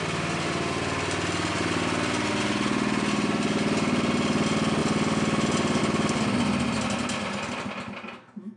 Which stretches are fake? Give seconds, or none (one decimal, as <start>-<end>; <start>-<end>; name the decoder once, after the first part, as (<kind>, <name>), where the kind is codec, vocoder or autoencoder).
none